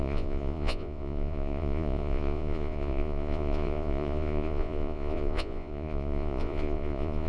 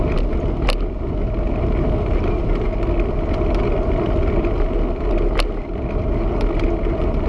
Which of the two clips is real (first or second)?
second